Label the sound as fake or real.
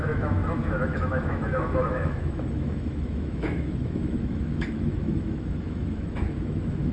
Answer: fake